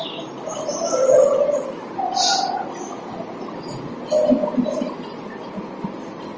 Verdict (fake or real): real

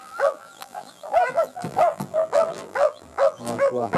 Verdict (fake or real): fake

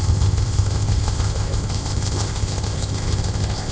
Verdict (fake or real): fake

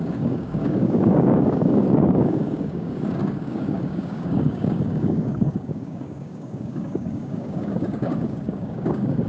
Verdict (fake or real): fake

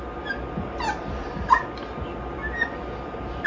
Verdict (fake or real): real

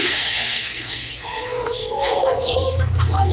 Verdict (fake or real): fake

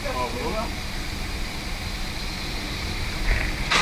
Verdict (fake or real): real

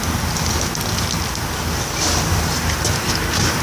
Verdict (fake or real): real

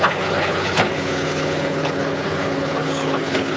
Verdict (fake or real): fake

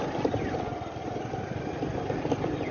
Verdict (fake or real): real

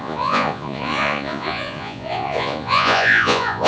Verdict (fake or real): fake